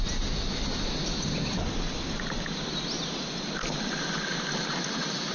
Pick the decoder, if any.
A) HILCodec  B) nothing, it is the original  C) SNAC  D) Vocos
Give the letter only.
B